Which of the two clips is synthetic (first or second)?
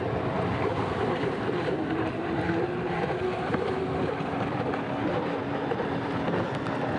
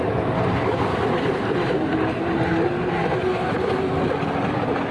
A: first